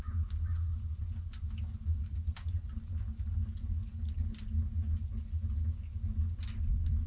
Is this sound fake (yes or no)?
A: no